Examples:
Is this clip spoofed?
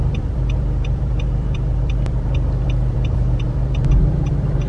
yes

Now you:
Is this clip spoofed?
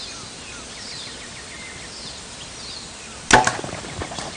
no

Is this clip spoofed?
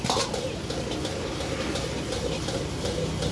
no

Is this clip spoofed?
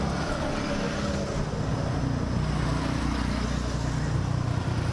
no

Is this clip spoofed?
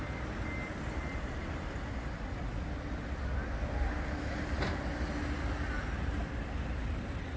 no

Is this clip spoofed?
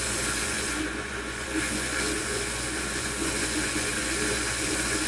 yes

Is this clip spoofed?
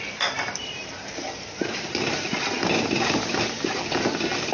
yes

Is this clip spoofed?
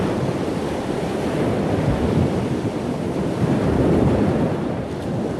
yes